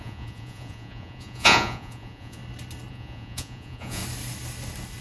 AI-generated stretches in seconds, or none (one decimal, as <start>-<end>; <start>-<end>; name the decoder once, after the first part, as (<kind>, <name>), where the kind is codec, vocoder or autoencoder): 0.0-2.4 (vocoder, Vocos); 2.9-4.0